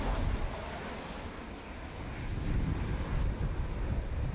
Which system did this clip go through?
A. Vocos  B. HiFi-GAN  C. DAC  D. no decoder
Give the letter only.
D